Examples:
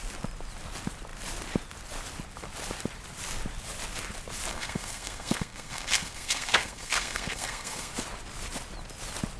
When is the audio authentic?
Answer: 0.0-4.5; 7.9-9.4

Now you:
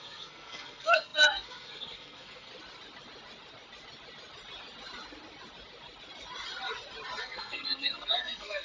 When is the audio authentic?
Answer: 2.5-7.2